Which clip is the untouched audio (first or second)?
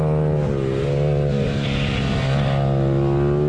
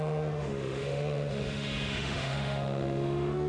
first